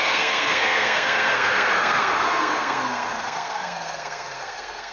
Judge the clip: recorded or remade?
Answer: remade